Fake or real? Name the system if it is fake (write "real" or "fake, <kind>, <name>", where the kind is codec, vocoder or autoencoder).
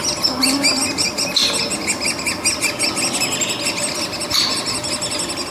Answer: real